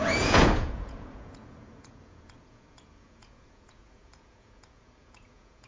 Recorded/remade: remade